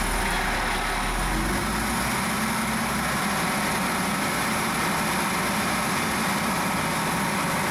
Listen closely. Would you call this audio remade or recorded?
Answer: recorded